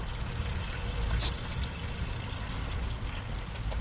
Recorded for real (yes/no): yes